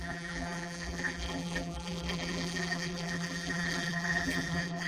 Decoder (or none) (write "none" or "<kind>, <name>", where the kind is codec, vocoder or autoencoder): vocoder, BigVGAN v2